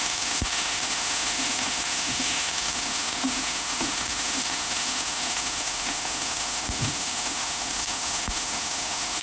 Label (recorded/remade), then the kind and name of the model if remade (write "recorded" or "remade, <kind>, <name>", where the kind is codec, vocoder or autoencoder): remade, autoencoder, DAC-VAE